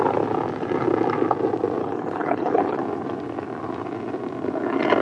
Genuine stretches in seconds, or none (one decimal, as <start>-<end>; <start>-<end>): 0.0-1.8; 2.8-5.0